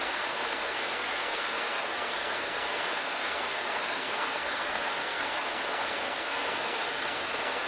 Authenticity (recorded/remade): remade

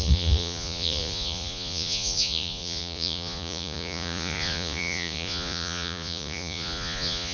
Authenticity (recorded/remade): remade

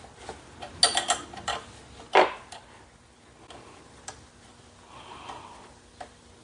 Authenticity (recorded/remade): recorded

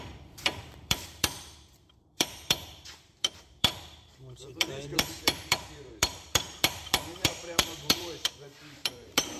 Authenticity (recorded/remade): remade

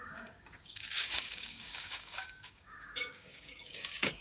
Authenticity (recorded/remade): remade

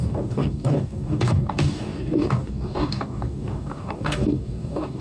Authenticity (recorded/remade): remade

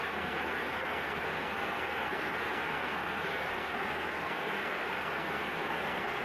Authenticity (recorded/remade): remade